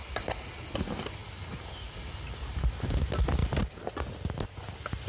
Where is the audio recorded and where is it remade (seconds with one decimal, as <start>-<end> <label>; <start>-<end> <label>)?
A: 0.0-5.1 recorded